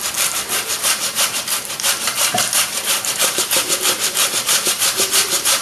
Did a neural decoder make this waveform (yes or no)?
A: yes